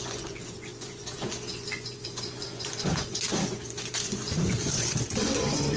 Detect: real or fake fake